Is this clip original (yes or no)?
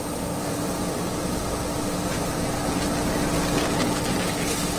yes